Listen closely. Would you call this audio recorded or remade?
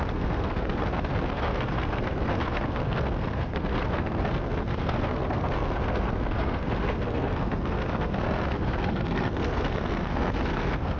remade